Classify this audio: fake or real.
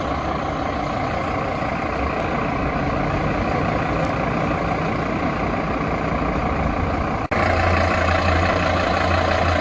real